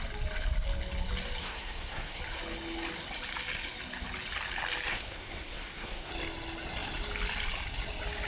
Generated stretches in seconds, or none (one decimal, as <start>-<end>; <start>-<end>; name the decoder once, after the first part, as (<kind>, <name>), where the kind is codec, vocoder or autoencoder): 1.4-2.2 (codec, SNAC); 4.9-6.1